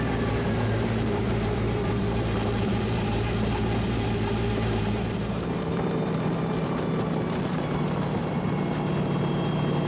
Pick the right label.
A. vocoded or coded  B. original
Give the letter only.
A